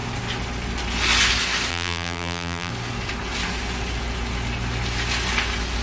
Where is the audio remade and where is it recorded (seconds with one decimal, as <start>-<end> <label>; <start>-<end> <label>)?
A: 0.0-1.7 recorded; 1.7-2.7 remade; 2.7-5.8 recorded